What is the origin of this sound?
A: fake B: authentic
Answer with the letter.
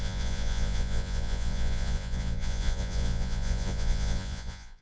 A